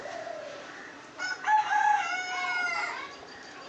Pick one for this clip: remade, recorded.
remade